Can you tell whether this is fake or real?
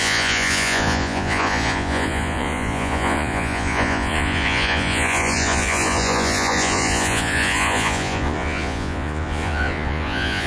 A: fake